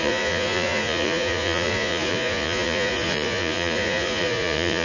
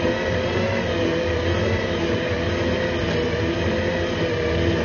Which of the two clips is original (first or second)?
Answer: second